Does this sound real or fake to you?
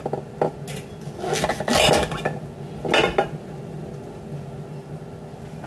real